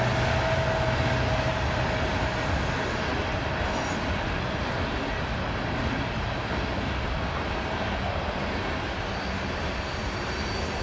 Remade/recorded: recorded